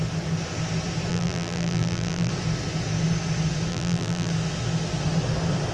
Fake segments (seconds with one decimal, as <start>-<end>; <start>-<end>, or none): 1.1-2.3; 3.7-4.3